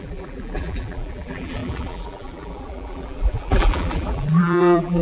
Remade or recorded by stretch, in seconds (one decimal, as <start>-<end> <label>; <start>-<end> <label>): 0.0-5.0 remade